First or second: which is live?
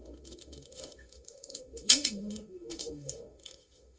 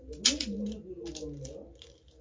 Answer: second